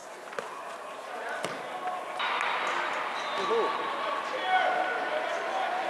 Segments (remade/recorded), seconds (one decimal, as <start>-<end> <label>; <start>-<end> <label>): 0.0-5.9 recorded